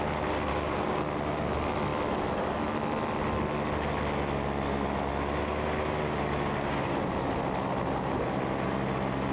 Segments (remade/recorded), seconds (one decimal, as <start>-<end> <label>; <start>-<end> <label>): 0.0-0.5 recorded; 0.5-1.0 remade; 1.0-9.3 recorded